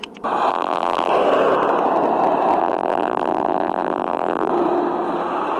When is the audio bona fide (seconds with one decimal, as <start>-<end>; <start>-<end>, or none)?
0.0-0.5; 1.1-2.6; 4.5-5.6